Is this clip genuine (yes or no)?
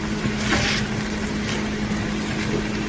yes